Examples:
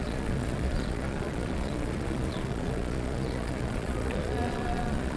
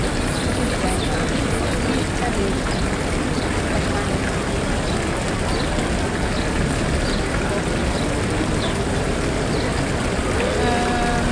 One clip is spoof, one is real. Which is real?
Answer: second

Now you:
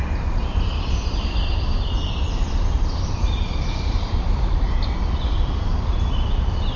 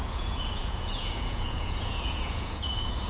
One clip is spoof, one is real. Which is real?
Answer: first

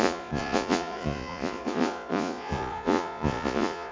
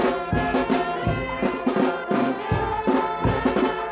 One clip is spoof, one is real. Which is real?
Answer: second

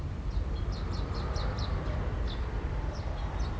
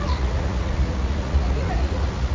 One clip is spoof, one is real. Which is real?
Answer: first